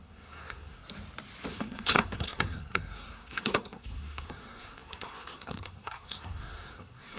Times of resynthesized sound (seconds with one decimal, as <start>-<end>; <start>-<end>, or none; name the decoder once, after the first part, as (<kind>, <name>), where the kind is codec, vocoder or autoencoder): 0.0-0.8 (codec, SNAC); 1.5-7.2